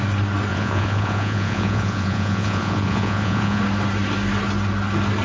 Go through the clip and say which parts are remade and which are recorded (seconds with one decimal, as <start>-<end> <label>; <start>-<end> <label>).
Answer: 0.0-0.5 recorded; 0.5-3.6 remade; 3.6-5.2 recorded